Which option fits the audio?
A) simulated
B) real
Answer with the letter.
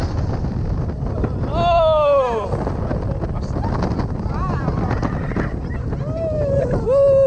B